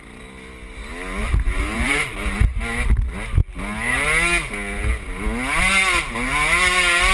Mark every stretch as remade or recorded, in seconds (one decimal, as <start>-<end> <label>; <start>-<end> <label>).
0.0-1.2 recorded; 1.2-2.6 remade; 2.6-7.1 recorded